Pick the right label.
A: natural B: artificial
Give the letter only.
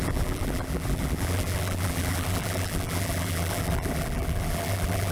B